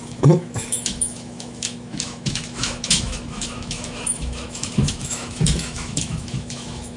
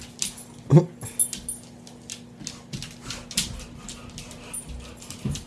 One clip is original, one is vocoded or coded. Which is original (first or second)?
second